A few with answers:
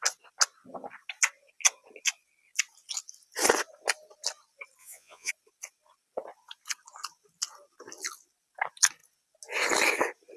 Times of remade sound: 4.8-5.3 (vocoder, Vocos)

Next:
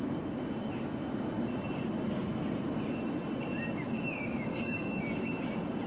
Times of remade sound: 3.8-5.4 (autoencoder, DAC-VAE)

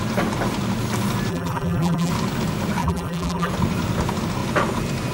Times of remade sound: 1.3-2.1 (vocoder, BigVGAN v2); 2.8-3.5

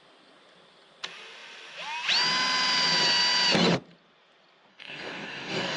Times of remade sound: 4.7-5.8 (codec, DAC)

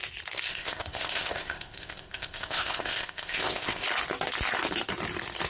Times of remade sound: 0.5-3.8 (codec, ZipCodec)

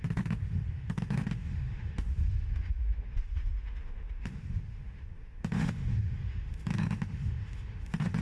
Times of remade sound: 0.0-8.2 (autoencoder, DAC-VAE)

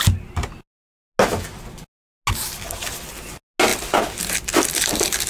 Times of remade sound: none

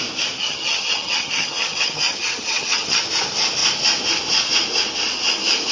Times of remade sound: 0.4-3.0 (vocoder, HiFi-GAN)